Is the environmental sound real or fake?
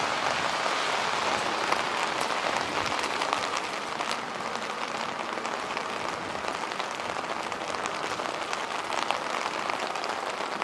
real